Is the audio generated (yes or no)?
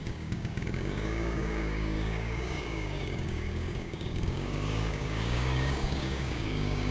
yes